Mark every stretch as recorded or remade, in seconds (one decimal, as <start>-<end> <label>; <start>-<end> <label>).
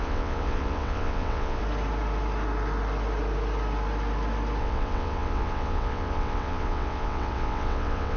0.0-1.6 remade; 1.6-4.6 recorded; 4.6-8.2 remade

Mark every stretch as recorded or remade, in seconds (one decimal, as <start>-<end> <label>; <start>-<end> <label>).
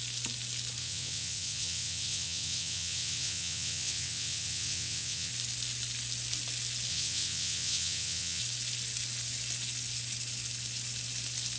0.0-0.8 recorded; 0.8-5.3 remade; 5.3-6.9 recorded; 6.9-8.4 remade; 8.4-11.6 recorded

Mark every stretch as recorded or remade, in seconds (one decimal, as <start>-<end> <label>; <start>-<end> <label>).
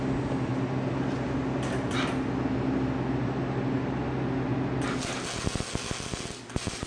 0.0-6.9 recorded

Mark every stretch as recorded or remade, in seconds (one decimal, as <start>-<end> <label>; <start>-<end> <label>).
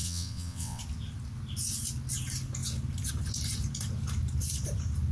0.0-0.8 remade; 0.8-5.1 recorded